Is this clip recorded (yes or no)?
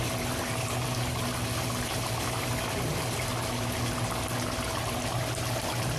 yes